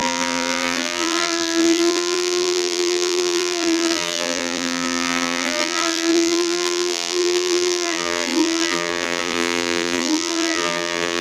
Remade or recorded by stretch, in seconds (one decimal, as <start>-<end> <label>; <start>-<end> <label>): 0.0-11.2 remade